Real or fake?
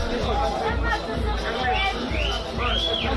real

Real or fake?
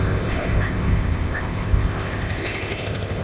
fake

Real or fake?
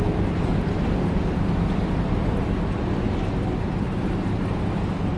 real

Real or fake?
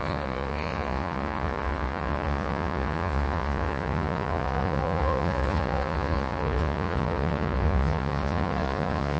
fake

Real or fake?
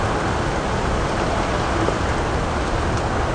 real